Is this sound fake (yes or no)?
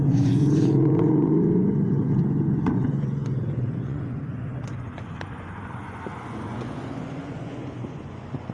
yes